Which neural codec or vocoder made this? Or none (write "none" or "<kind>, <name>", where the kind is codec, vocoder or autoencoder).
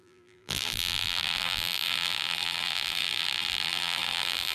vocoder, BigVGAN v2